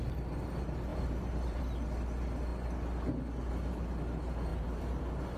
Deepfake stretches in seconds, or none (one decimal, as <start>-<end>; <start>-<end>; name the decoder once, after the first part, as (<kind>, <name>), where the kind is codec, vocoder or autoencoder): 0.9-1.6 (vocoder, BigVGAN v2); 4.5-5.0

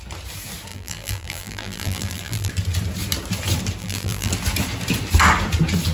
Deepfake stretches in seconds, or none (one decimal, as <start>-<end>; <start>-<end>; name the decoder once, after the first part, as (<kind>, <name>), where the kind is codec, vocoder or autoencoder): 0.7-2.5 (vocoder, BigVGAN v2); 3.8-4.3

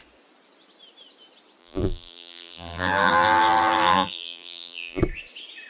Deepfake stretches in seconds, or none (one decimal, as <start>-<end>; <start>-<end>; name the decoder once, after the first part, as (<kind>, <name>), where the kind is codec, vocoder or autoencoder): 1.6-5.0 (vocoder, BigVGAN v2)

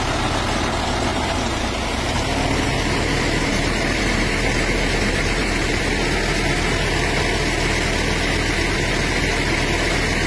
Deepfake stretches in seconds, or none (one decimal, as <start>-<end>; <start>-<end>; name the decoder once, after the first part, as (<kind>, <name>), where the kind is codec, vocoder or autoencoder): 1.1-5.8 (vocoder, BigVGAN v2)

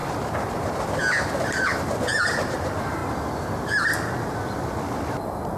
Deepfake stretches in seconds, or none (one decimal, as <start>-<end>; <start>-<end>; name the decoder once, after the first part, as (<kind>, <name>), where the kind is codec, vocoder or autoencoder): 0.0-1.0 (vocoder, BigVGAN v2); 2.4-3.0

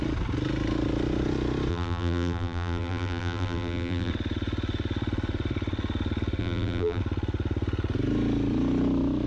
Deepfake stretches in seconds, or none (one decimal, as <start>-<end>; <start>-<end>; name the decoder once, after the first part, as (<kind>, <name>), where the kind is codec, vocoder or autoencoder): 1.7-4.1 (vocoder, BigVGAN v2); 6.4-7.0

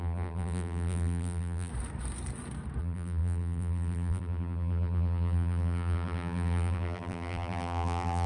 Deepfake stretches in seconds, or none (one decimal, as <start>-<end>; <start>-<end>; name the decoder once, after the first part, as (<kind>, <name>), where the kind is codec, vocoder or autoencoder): 0.0-1.7 (vocoder, BigVGAN v2); 2.8-8.3